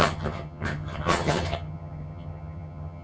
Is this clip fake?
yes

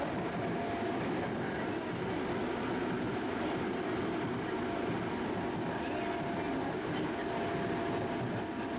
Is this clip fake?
no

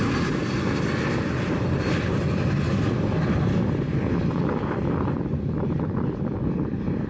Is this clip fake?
no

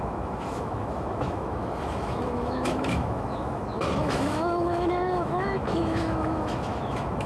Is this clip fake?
yes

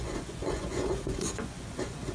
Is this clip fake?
yes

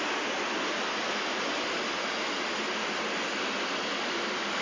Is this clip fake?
no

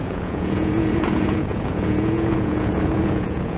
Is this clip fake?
yes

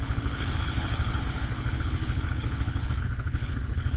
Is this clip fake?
yes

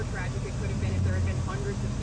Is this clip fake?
no